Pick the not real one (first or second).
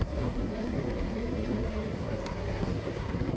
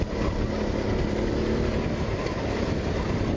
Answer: first